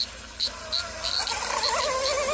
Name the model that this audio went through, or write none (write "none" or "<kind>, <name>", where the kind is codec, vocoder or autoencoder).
none